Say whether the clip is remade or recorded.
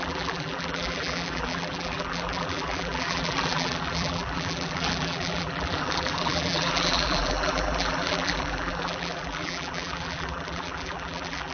remade